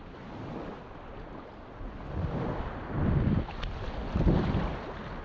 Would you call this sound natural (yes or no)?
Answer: yes